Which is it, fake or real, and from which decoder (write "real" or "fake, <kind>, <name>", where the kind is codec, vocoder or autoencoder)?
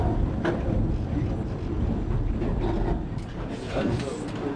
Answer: real